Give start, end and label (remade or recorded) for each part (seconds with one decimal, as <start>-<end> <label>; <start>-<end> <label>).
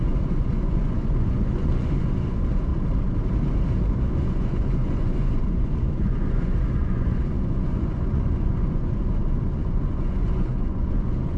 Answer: 0.0-2.7 remade; 2.7-4.2 recorded; 4.2-11.4 remade